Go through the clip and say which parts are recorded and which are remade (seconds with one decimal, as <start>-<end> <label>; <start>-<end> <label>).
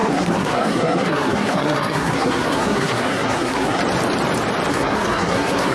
0.0-3.8 remade; 3.8-4.7 recorded; 4.7-5.7 remade